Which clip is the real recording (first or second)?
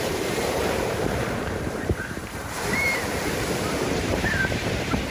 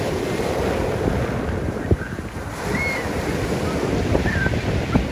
second